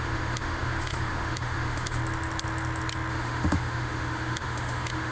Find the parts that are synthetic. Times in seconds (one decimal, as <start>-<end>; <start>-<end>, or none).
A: 0.0-2.0; 3.1-5.1